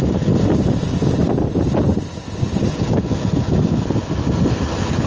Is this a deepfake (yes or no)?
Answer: no